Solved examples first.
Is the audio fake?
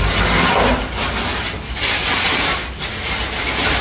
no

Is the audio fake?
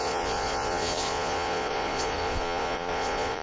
yes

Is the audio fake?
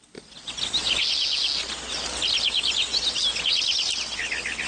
no